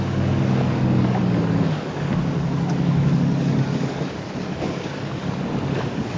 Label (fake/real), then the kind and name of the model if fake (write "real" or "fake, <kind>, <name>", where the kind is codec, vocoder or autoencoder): fake, codec, DAC